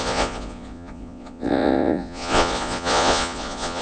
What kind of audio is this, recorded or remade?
remade